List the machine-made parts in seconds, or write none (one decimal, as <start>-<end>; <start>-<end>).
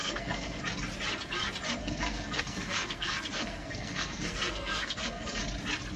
0.0-0.6; 1.8-5.4